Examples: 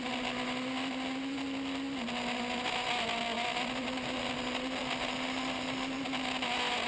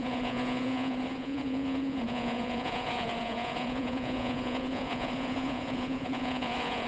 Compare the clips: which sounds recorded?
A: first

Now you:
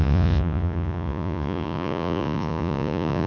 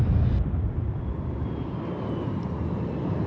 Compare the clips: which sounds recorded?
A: second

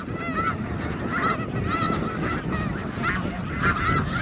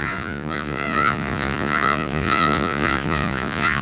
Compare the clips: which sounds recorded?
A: first